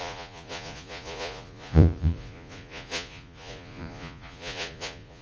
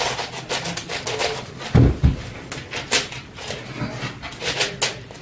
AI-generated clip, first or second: first